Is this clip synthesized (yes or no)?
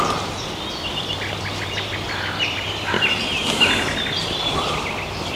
yes